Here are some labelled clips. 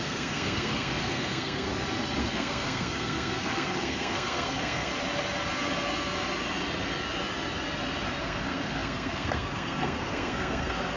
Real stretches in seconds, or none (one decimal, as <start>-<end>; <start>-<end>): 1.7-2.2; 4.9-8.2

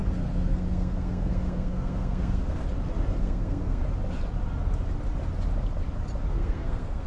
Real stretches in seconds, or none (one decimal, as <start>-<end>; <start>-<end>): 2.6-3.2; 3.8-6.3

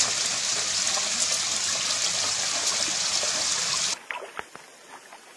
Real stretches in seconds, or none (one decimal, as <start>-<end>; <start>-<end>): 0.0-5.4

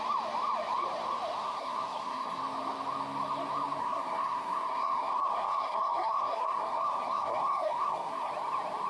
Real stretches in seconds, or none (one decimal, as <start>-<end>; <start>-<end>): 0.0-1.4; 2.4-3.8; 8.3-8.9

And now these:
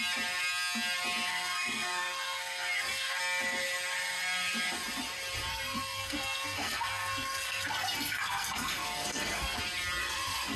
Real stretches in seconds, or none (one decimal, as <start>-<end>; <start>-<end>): 0.0-1.3; 3.2-5.5; 9.6-10.0